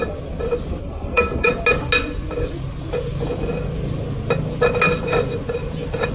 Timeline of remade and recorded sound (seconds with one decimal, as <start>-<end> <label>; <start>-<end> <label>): 0.0-0.8 recorded; 0.8-1.5 remade; 1.5-6.1 recorded